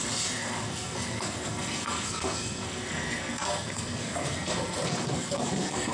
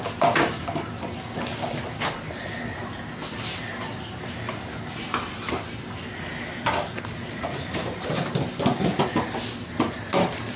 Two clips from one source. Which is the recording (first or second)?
second